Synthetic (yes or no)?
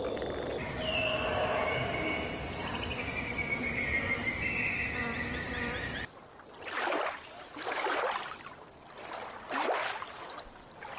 no